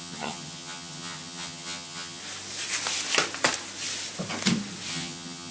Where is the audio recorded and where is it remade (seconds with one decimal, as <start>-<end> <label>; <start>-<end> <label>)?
0.0-2.2 remade; 2.2-4.9 recorded; 4.9-5.5 remade